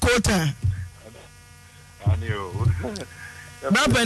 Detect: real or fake real